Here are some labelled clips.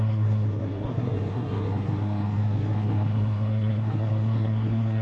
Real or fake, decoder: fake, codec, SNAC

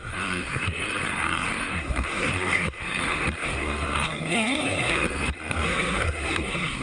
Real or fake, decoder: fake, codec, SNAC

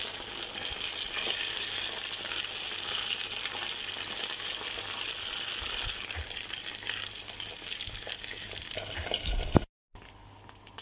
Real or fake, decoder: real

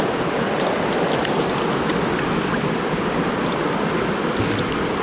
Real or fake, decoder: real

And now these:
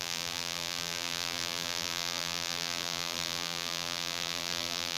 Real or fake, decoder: fake, vocoder, BigVGAN v2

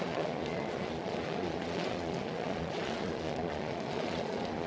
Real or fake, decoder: fake, vocoder, Vocos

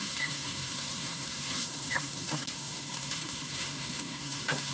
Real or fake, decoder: fake, codec, SNAC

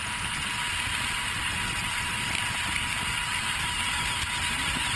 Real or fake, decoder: real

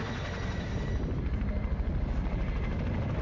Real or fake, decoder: real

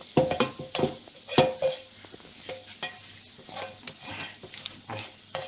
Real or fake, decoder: real